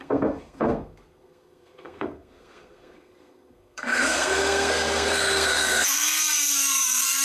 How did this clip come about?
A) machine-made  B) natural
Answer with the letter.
A